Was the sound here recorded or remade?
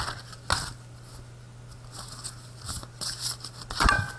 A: recorded